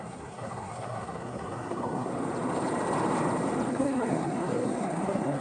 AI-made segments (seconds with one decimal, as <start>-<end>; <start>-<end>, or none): 0.0-2.1; 3.7-5.4